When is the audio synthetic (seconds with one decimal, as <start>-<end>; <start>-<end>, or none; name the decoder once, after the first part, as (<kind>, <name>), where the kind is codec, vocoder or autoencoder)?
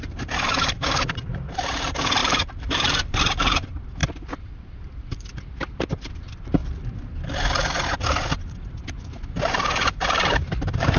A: 0.0-4.0 (vocoder, BigVGAN v2); 5.9-6.6; 9.5-11.0